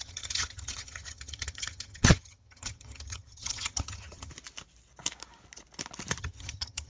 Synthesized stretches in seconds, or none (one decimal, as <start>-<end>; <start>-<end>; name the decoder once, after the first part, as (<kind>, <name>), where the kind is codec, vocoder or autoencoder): 0.0-4.3 (vocoder, HiFi-GAN); 6.2-6.9